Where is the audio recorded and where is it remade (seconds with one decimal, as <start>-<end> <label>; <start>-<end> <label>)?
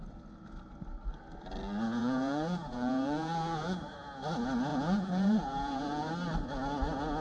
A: 0.0-2.0 recorded; 2.0-3.8 remade; 3.8-4.7 recorded; 4.7-6.1 remade; 6.1-7.2 recorded